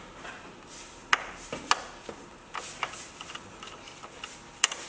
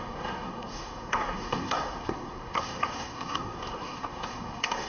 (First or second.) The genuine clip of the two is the first